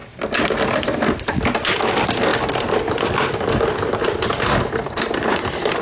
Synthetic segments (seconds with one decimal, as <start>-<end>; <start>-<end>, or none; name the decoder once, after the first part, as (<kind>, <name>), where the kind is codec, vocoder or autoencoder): none